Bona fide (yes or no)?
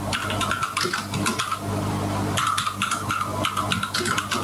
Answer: yes